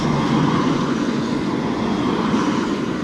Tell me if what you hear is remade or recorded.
remade